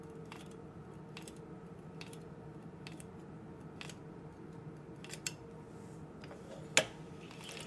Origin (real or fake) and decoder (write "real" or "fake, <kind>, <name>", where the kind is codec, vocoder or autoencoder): real